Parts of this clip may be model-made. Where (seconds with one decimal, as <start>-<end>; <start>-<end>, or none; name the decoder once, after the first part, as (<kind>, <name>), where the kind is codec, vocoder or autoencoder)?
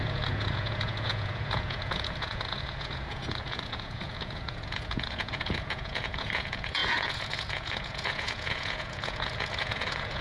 0.0-10.2 (vocoder, Vocos)